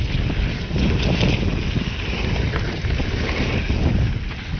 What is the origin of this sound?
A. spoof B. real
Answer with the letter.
B